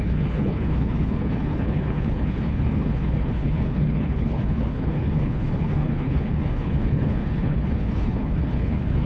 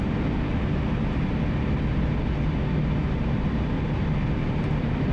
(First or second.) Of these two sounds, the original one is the second